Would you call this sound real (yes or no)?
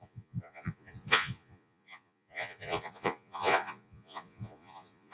no